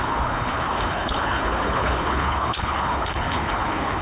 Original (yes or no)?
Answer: no